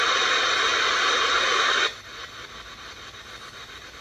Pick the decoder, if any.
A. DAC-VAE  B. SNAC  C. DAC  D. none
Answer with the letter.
D